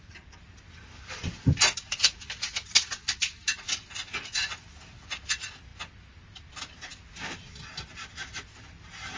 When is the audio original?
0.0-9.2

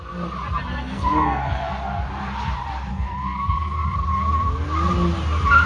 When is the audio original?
0.0-0.7; 1.7-2.9; 3.7-5.7

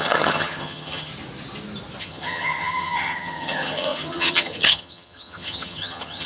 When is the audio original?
1.1-2.0